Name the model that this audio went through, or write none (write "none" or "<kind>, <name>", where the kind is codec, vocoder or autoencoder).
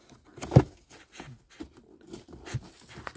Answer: none